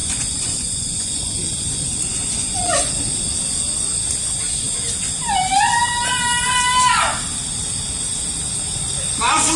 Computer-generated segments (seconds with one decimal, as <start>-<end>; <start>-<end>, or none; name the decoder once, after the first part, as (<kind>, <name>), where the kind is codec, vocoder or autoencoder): 0.0-2.9 (vocoder, Vocos)